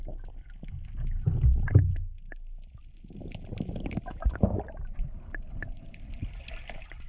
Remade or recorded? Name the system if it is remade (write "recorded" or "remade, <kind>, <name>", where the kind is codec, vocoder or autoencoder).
recorded